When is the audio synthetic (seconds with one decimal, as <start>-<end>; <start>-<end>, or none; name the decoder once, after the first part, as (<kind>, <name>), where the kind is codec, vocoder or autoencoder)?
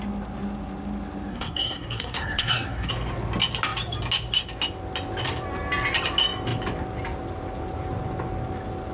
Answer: 1.3-2.9 (codec, SNAC)